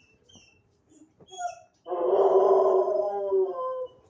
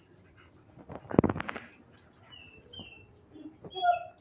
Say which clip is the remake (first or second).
first